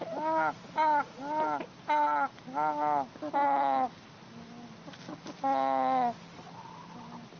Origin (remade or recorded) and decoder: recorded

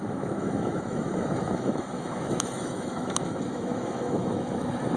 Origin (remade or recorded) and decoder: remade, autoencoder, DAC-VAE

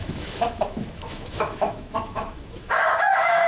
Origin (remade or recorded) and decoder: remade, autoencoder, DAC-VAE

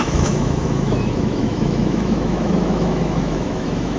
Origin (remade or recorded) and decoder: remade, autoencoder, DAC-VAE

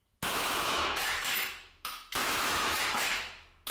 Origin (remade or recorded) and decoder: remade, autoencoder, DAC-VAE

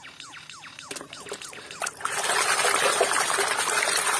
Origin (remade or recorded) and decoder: recorded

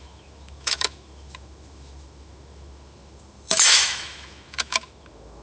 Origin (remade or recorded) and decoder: remade, autoencoder, DAC-VAE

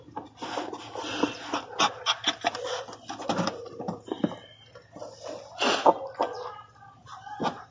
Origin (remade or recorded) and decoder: recorded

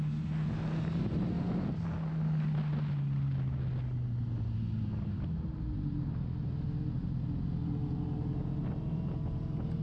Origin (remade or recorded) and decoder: recorded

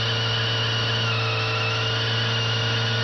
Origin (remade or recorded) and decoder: recorded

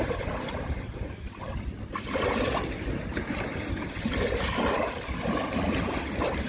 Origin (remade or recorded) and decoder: recorded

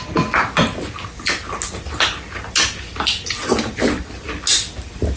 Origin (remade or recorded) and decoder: recorded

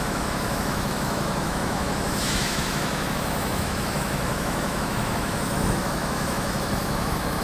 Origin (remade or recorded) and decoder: remade, autoencoder, DAC-VAE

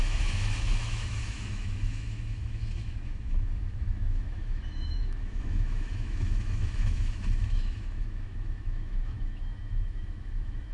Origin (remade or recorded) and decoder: remade, autoencoder, DAC-VAE